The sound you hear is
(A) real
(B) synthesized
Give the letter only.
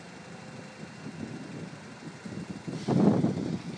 B